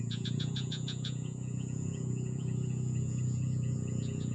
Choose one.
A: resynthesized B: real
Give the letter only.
A